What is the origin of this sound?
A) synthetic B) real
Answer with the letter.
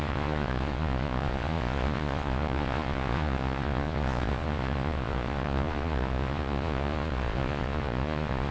A